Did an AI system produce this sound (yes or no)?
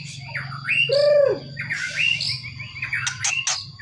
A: no